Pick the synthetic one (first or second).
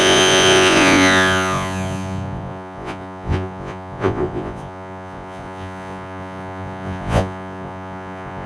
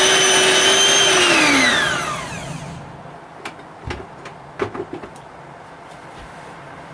first